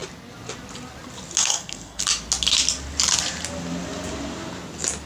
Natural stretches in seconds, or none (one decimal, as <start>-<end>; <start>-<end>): 0.0-1.4; 2.0-5.1